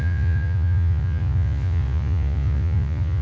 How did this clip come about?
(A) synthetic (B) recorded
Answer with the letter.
A